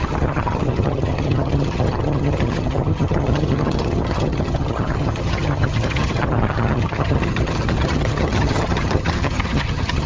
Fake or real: fake